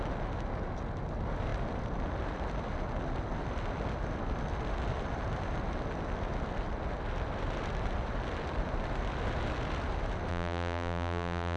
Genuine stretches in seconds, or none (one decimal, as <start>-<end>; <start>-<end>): 0.0-10.3